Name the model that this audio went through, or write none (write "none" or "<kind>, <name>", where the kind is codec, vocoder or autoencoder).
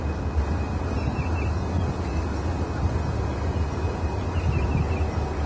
none